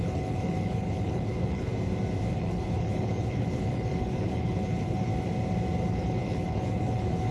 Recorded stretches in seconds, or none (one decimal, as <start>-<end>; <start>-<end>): 1.7-2.2; 5.1-5.9